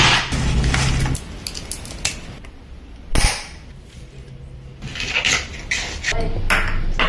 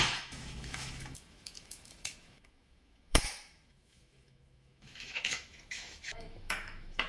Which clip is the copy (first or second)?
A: second